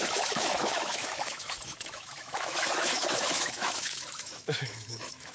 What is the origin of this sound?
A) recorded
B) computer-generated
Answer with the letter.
B